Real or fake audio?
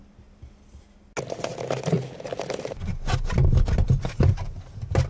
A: real